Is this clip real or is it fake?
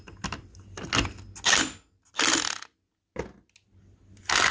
real